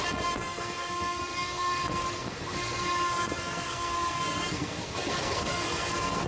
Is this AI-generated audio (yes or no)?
yes